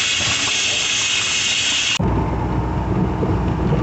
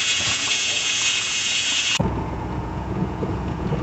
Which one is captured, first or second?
first